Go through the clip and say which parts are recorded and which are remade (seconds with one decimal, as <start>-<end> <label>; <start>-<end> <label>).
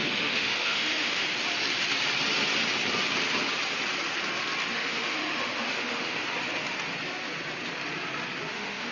0.0-1.2 remade; 1.2-4.7 recorded; 4.7-6.2 remade; 6.2-8.5 recorded; 8.5-8.9 remade